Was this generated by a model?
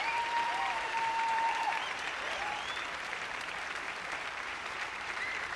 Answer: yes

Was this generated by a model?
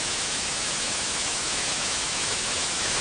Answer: yes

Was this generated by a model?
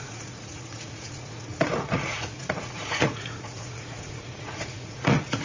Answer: yes